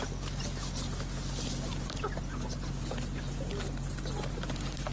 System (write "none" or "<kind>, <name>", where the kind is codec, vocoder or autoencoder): none